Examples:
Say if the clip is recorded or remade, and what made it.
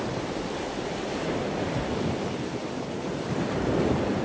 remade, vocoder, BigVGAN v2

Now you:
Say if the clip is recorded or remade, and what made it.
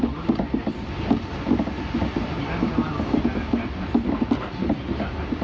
recorded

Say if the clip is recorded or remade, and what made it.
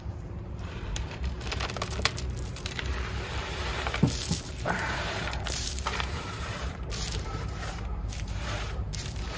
remade, vocoder, BigVGAN v2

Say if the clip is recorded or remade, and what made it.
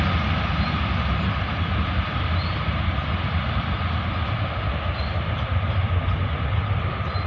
recorded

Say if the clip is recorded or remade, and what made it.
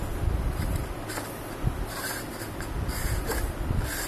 recorded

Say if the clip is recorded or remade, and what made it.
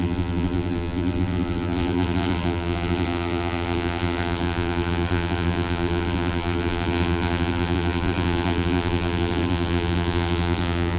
remade, vocoder, BigVGAN v2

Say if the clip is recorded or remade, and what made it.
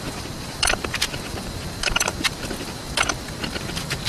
remade, vocoder, BigVGAN v2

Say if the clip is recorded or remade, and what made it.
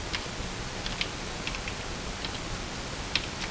recorded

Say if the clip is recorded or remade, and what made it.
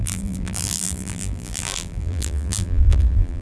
remade, vocoder, BigVGAN v2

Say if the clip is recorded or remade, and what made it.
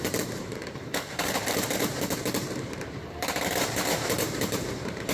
remade, vocoder, BigVGAN v2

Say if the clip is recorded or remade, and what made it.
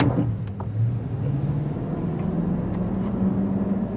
recorded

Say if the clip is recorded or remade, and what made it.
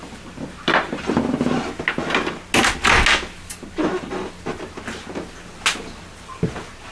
recorded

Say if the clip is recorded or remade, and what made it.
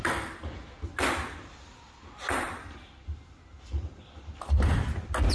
recorded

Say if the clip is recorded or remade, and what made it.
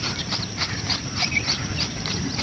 remade, vocoder, BigVGAN v2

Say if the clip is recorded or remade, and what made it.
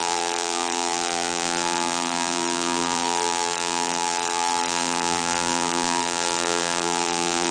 remade, vocoder, BigVGAN v2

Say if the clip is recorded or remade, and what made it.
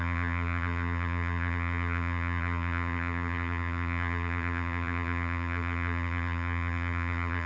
remade, vocoder, BigVGAN v2